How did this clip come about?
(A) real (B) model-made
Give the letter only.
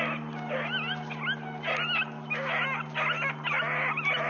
A